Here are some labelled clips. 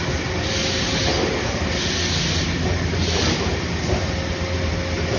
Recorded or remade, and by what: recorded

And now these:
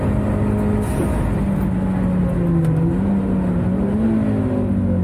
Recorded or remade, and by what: recorded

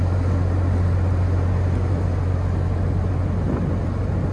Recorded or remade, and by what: recorded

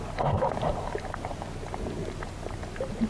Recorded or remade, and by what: recorded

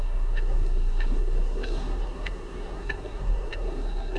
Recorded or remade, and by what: remade, codec, SNAC